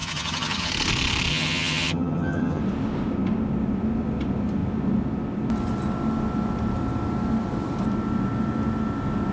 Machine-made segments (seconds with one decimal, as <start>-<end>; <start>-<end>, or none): 0.0-0.7; 1.3-2.6